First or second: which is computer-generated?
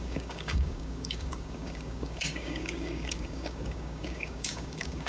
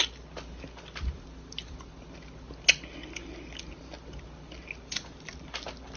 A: first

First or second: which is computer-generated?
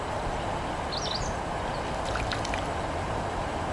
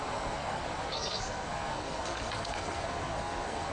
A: second